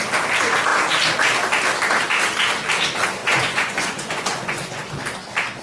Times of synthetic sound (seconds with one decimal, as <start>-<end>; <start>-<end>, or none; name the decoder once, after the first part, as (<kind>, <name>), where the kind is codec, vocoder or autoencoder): 3.2-4.8 (vocoder, Vocos)